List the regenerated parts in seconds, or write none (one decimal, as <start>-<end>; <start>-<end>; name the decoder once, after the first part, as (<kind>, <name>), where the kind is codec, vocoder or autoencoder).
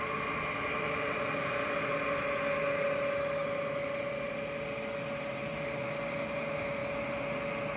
none